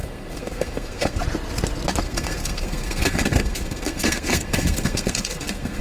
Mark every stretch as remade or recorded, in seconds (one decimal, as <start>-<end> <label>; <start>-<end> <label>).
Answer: 0.0-1.2 remade; 1.2-2.0 recorded; 2.0-5.8 remade